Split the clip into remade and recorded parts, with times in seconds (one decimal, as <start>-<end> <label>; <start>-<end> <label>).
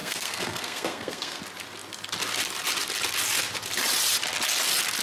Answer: 0.0-1.4 remade; 1.4-5.0 recorded